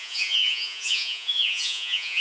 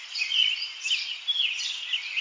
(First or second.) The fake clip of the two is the first